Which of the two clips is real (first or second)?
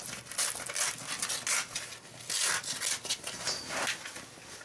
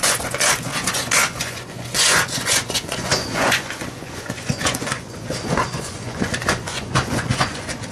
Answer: first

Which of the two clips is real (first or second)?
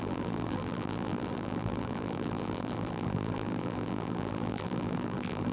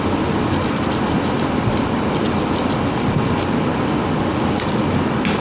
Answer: second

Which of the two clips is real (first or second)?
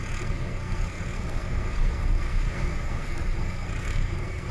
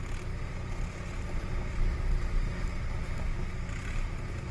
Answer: second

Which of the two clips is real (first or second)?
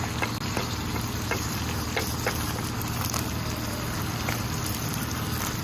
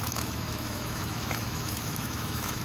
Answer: first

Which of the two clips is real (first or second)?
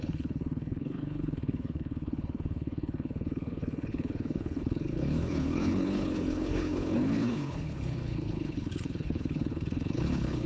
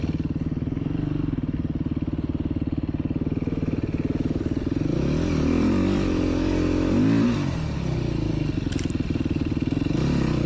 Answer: second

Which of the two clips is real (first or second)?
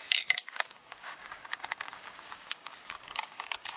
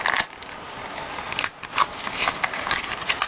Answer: second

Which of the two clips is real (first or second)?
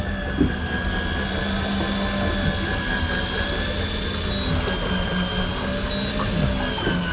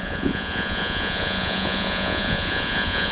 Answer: first